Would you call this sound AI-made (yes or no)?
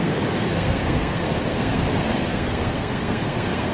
yes